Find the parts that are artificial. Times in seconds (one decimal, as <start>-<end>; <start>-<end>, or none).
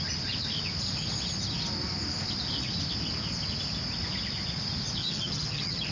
5.0-5.9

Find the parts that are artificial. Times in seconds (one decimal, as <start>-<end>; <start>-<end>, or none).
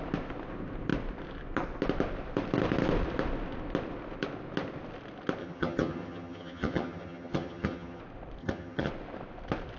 5.4-8.0; 8.4-8.9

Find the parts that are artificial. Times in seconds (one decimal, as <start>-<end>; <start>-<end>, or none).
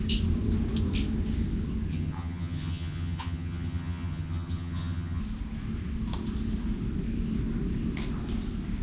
1.9-5.2